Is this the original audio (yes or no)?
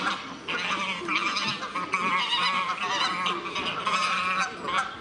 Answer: yes